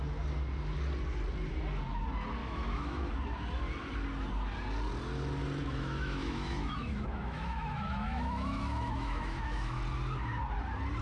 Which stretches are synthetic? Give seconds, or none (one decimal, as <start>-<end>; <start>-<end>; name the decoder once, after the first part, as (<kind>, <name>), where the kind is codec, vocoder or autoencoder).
2.4-3.1 (autoencoder, DAC-VAE); 5.6-9.8